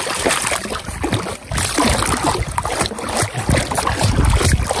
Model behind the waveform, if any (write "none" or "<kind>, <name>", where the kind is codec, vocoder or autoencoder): none